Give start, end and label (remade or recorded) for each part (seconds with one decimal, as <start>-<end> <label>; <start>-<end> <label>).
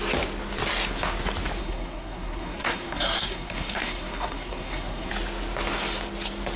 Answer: 0.0-1.6 recorded; 1.6-5.1 remade; 5.1-6.6 recorded